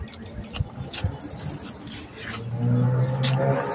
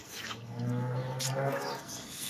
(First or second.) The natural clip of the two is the first